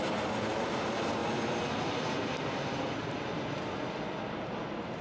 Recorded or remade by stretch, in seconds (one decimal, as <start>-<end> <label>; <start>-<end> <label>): 0.0-5.0 recorded